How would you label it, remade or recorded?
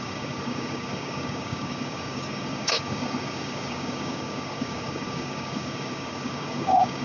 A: remade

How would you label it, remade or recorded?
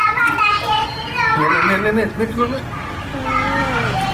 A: recorded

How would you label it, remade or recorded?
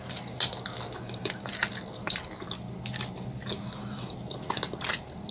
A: recorded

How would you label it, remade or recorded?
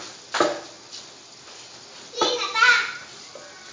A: recorded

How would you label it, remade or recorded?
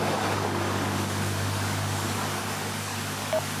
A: remade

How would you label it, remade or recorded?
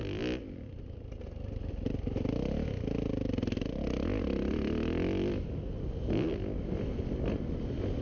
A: recorded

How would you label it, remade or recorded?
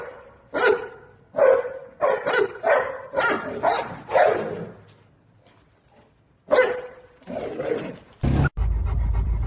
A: recorded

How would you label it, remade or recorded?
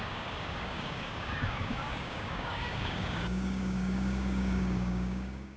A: remade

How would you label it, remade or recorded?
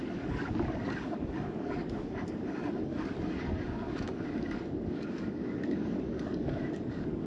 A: remade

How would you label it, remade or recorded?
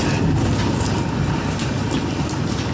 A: recorded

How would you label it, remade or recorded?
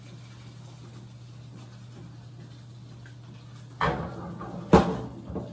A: recorded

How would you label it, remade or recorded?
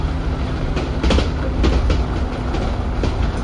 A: recorded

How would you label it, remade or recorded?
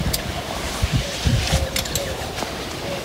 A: recorded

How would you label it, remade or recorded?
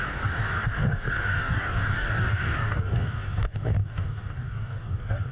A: remade